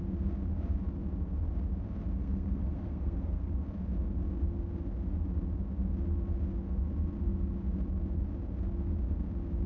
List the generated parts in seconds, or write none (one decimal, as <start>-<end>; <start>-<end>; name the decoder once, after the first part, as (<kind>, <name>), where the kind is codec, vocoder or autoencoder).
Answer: 2.2-3.5 (codec, SNAC)